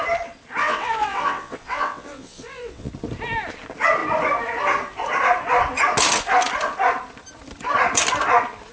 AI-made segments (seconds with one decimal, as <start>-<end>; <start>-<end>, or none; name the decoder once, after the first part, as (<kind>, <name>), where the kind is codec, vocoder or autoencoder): 0.6-2.9 (vocoder, WaveNeXt)